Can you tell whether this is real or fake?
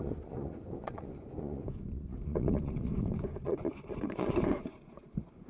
fake